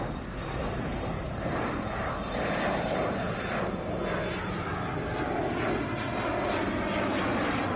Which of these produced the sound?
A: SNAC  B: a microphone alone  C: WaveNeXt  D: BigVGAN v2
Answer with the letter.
B